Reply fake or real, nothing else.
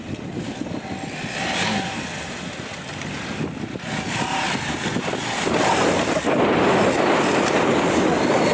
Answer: real